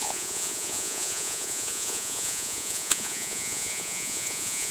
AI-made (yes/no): yes